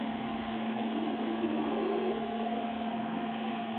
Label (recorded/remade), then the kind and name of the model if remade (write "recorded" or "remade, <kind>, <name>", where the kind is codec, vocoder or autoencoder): remade, codec, SNAC